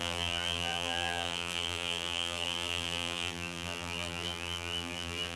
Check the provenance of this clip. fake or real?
fake